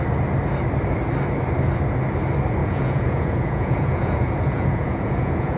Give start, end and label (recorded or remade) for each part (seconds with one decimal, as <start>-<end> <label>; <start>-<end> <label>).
0.0-2.6 recorded; 2.6-5.6 remade